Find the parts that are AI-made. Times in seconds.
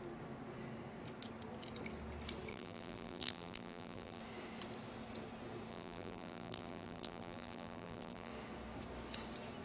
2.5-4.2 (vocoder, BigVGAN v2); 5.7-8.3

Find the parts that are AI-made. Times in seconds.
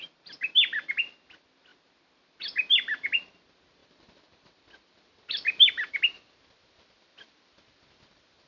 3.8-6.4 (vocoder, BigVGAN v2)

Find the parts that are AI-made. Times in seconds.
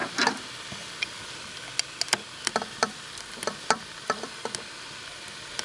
0.0-1.4 (vocoder, BigVGAN v2); 2.1-4.4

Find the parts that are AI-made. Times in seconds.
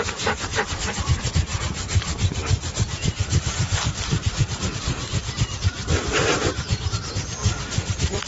1.5-4.7 (vocoder, BigVGAN v2)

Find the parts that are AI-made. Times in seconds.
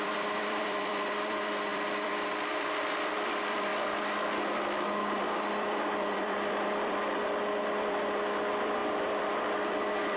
0.0-3.7 (vocoder, BigVGAN v2); 5.2-10.2